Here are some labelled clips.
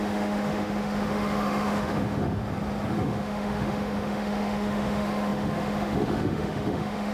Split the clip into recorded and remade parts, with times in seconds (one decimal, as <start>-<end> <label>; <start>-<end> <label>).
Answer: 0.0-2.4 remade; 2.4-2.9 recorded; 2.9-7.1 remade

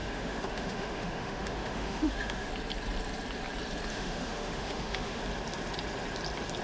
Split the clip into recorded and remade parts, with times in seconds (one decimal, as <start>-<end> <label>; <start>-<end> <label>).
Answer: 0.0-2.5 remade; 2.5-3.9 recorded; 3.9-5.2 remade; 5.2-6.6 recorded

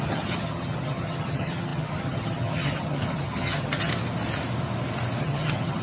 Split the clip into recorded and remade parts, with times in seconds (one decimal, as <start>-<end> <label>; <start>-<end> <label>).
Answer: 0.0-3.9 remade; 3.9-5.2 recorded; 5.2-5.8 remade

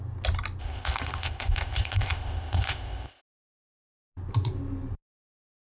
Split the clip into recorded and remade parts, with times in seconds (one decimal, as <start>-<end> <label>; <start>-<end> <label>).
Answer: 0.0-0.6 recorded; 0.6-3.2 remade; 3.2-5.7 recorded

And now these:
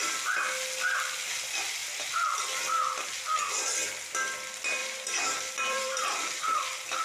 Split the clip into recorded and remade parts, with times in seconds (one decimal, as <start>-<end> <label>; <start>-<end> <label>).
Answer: 0.0-4.8 recorded; 4.8-6.6 remade; 6.6-7.0 recorded